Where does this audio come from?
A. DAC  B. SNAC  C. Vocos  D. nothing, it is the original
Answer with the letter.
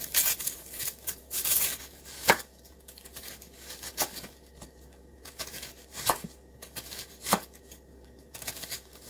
A